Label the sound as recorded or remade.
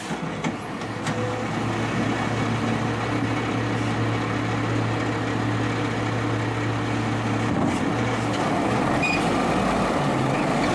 recorded